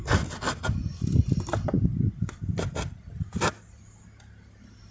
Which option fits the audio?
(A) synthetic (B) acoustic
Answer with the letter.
B